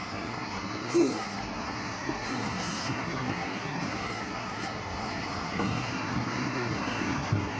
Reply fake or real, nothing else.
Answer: fake